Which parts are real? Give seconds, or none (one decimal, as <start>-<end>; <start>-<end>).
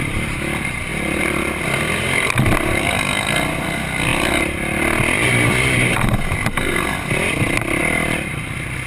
0.0-8.9